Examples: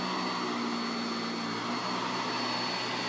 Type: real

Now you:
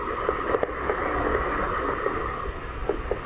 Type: real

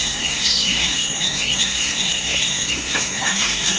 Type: fake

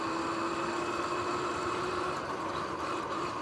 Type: real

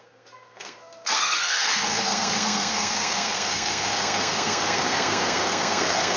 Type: fake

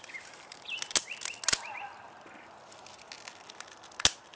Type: real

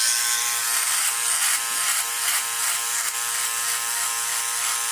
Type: real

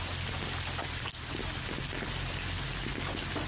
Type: real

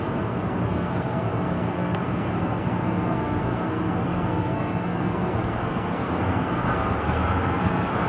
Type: fake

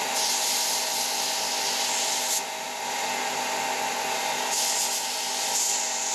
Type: real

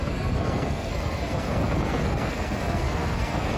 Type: fake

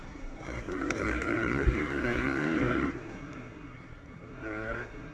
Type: fake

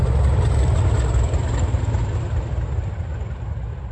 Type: real